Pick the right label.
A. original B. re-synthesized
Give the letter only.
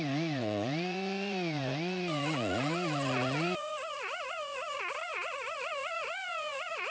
B